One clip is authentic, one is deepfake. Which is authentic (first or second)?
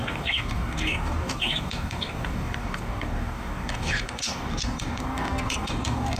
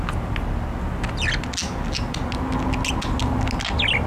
second